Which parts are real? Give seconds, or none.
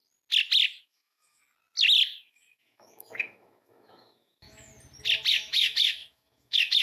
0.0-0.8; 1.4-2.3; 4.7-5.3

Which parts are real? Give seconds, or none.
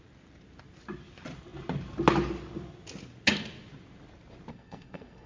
0.0-4.5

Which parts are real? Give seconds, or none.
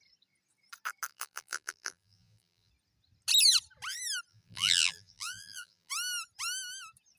0.0-1.1; 2.7-4.3; 5.9-7.2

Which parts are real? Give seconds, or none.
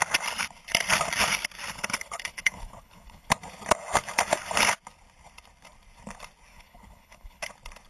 0.0-1.7; 3.3-6.5; 7.4-7.9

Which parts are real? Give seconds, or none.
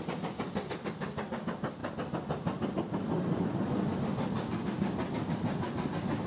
0.0-6.3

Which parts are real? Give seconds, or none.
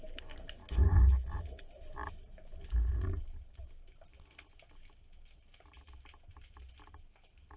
0.0-0.6; 1.6-7.6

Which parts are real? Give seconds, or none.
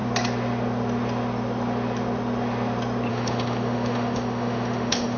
0.0-3.1